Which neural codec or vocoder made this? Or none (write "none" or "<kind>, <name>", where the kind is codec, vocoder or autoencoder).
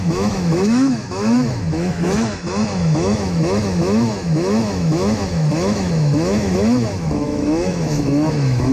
autoencoder, DAC-VAE